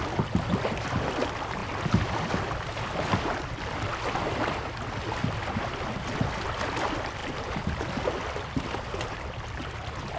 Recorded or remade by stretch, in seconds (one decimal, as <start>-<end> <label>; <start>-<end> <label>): 0.0-10.2 recorded